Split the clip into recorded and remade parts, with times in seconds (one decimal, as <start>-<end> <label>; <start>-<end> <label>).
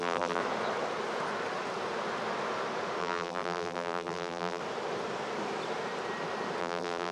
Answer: 0.0-0.4 remade; 0.4-3.0 recorded; 3.0-4.6 remade; 4.6-6.6 recorded; 6.6-7.1 remade